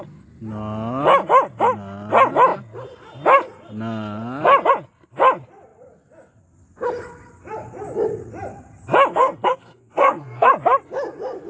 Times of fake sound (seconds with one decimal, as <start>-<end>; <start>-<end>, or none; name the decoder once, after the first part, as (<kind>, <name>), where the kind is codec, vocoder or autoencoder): 9.1-10.5 (codec, SNAC)